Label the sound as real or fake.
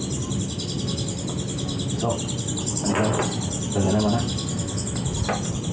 real